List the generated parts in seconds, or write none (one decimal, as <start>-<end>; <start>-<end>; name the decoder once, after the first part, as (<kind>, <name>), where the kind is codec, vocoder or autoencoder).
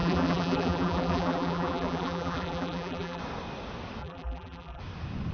0.0-3.2 (vocoder, BigVGAN v2); 4.0-4.8